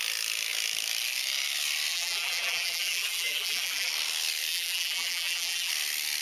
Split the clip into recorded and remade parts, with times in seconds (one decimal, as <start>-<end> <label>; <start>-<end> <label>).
0.0-1.9 recorded; 1.9-3.9 remade; 3.9-4.5 recorded; 4.5-5.7 remade; 5.7-6.2 recorded